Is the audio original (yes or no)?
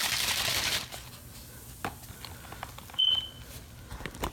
yes